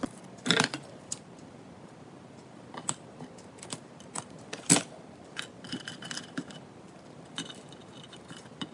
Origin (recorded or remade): remade